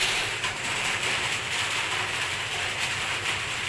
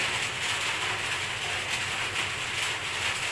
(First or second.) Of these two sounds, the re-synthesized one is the first